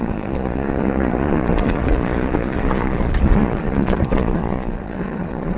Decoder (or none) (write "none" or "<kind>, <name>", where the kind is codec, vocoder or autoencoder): vocoder, Vocos